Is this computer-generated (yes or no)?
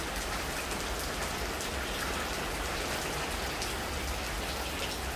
no